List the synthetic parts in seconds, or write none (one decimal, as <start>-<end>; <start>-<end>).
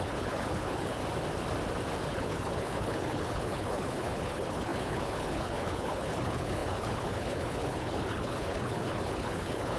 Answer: 0.0-1.0; 2.1-9.8